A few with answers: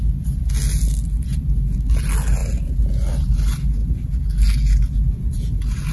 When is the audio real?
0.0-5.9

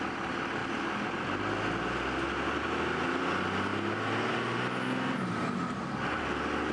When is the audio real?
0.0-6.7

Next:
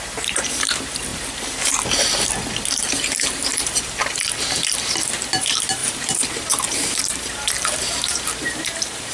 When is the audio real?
1.1-2.9

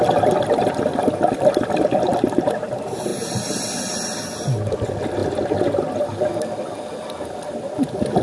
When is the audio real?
0.0-5.2; 5.8-8.2

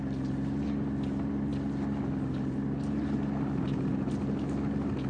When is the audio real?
0.0-5.1

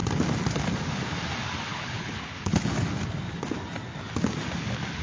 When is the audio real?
0.0-1.7; 2.7-5.0